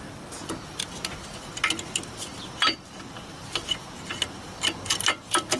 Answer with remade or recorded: recorded